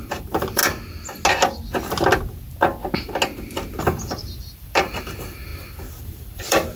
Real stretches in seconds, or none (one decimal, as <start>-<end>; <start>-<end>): 0.6-3.8

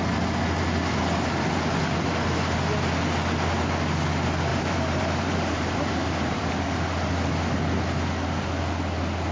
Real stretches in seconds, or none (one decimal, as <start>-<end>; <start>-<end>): 0.0-4.5; 6.5-9.3

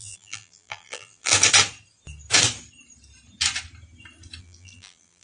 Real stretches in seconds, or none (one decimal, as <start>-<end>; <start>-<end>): 1.3-4.4

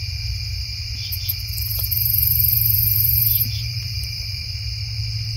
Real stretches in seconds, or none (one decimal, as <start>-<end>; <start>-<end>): 0.0-1.7; 4.4-5.4

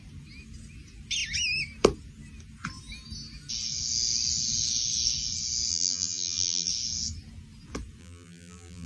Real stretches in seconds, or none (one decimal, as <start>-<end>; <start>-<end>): 0.0-5.7; 6.7-8.0

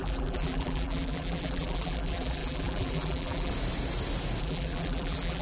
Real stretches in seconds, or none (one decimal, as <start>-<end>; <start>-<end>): 3.5-4.4